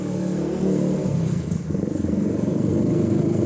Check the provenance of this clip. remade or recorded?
remade